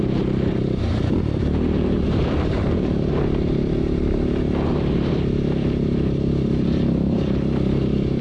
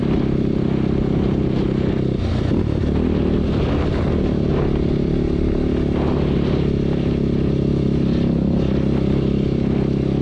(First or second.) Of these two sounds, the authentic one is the second